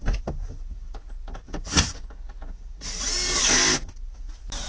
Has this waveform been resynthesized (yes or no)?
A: no